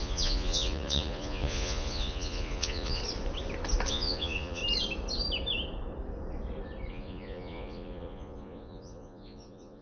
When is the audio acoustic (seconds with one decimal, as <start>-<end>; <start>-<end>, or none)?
3.0-3.9; 4.6-6.9